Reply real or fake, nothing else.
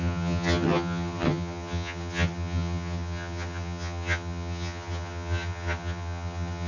fake